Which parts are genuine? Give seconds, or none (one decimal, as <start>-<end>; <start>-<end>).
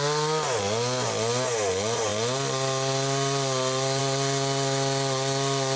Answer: 0.0-5.8